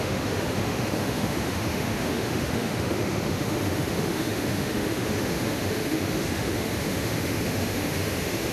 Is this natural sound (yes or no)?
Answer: no